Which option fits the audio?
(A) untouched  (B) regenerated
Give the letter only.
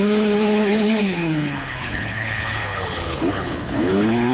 B